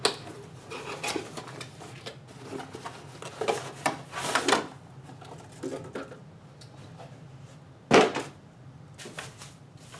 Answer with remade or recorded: recorded